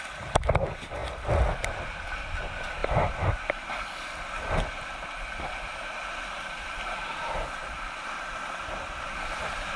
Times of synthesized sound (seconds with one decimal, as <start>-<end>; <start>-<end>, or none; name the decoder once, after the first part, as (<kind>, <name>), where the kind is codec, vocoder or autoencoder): none